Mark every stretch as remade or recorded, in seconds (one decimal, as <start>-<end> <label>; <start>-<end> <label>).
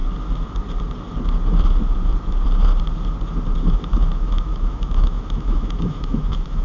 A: 0.0-3.6 recorded; 3.6-6.6 remade